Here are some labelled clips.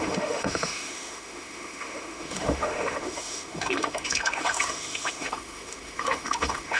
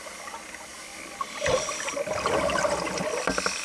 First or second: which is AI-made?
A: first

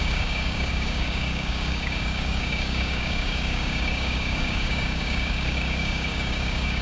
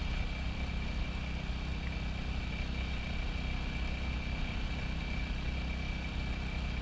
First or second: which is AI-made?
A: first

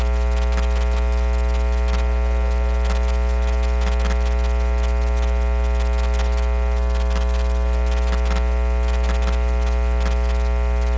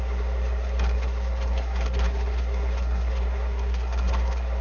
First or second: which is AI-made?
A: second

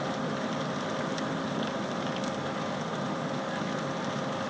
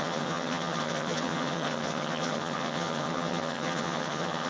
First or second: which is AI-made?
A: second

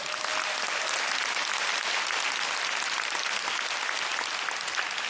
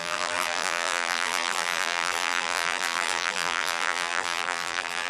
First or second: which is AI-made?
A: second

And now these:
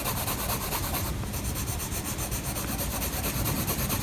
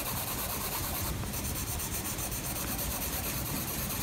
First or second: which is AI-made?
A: second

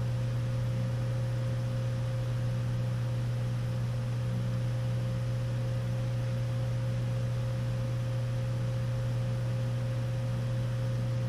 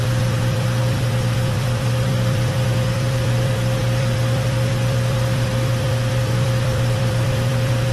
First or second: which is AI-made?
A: second